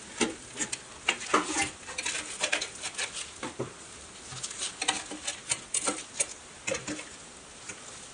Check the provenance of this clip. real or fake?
real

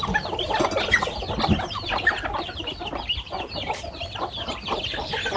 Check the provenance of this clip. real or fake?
real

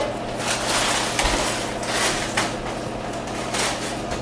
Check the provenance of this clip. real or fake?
real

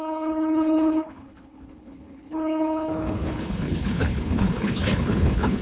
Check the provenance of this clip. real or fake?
fake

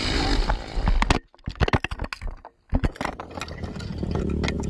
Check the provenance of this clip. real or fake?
real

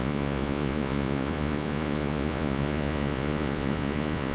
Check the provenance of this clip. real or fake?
fake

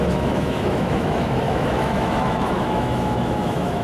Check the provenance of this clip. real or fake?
fake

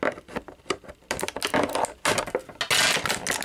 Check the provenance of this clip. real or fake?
real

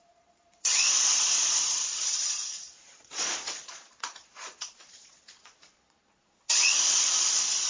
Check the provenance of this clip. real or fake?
fake